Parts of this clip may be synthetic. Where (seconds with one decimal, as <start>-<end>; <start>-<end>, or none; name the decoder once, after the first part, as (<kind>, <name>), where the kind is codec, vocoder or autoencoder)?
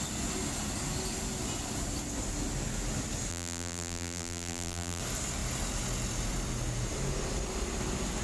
3.3-5.0 (vocoder, BigVGAN v2)